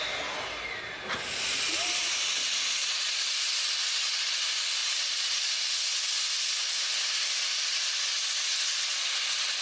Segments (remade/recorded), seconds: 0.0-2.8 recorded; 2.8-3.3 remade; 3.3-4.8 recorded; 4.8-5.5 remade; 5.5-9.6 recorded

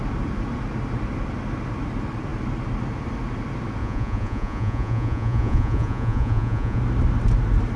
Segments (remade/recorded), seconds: 0.0-3.8 recorded; 3.8-6.8 remade; 6.8-7.8 recorded

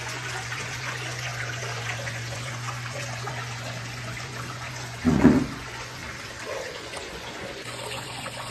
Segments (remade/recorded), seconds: 0.0-6.0 remade; 6.0-6.7 recorded; 6.7-8.5 remade

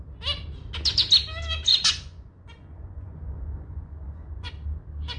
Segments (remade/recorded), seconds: 0.0-1.7 recorded; 1.7-4.5 remade; 4.5-5.2 recorded